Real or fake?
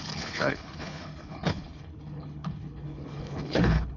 fake